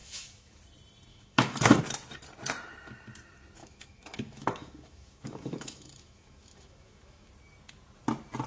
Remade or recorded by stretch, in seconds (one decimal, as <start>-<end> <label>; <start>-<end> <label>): 0.0-0.6 remade; 0.6-1.1 recorded; 1.1-1.8 remade; 1.8-3.6 recorded; 3.6-7.3 remade; 7.3-8.5 recorded